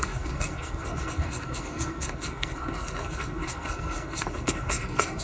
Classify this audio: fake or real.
fake